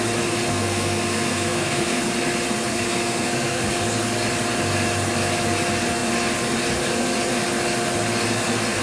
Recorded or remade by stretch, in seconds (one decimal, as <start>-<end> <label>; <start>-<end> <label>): 0.0-0.5 recorded; 0.5-2.0 remade; 2.0-2.7 recorded; 2.7-3.6 remade; 3.6-8.8 recorded